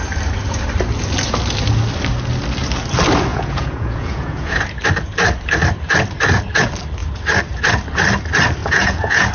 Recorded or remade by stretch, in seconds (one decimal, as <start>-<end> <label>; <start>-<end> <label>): 0.0-3.3 recorded; 3.3-4.6 remade; 4.6-8.6 recorded; 8.6-9.3 remade